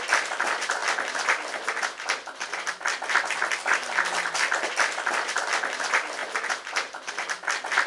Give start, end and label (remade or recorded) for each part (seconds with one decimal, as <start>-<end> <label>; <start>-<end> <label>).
0.0-6.2 recorded; 6.2-7.1 remade; 7.1-7.9 recorded